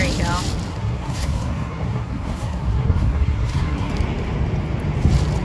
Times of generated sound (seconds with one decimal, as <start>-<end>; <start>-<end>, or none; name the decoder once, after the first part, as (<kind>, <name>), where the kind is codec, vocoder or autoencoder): 0.7-3.9 (codec, SNAC)